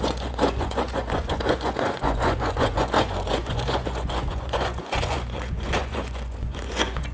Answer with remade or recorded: remade